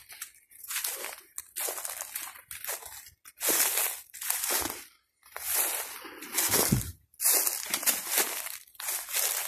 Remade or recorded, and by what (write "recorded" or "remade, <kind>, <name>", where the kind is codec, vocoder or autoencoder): recorded